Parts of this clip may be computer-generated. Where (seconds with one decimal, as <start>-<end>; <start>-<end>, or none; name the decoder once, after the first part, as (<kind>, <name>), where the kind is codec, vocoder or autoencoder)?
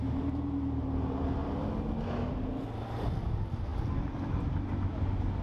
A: none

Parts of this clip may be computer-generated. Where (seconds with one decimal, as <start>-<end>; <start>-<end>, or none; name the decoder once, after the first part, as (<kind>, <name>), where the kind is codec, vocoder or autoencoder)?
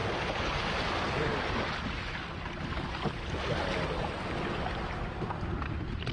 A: none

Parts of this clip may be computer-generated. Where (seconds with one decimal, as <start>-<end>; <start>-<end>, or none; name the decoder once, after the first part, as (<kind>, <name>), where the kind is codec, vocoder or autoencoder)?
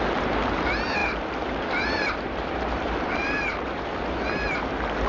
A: 1.0-4.1 (vocoder, BigVGAN v2)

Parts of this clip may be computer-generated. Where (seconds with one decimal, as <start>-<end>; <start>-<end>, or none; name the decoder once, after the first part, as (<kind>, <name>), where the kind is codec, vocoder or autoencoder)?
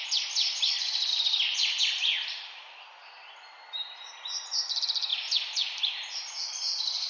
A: 1.1-1.8 (vocoder, BigVGAN v2); 5.1-7.1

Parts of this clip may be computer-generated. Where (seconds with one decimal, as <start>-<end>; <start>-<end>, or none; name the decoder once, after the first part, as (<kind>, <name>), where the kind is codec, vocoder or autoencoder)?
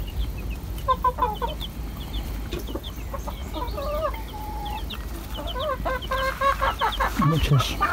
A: 0.0-3.4 (vocoder, BigVGAN v2); 4.0-4.6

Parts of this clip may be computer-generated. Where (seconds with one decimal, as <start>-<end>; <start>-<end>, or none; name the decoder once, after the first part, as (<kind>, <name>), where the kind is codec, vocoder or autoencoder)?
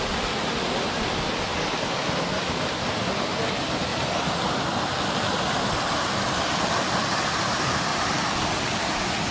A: 1.5-2.9 (vocoder, BigVGAN v2); 7.9-8.5